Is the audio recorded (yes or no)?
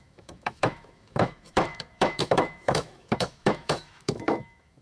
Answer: no